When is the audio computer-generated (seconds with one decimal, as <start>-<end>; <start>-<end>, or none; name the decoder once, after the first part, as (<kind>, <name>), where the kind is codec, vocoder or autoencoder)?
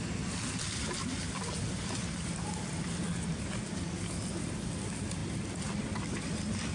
none